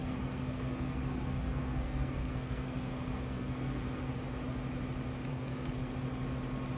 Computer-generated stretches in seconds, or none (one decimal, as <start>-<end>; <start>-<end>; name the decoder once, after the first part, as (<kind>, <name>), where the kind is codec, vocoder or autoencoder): 0.0-4.1 (codec, SNAC); 5.3-5.9